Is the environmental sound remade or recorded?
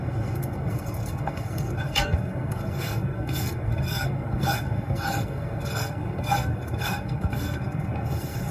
remade